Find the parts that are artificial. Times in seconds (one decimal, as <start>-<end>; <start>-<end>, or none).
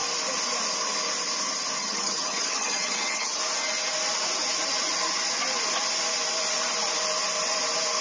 1.8-3.4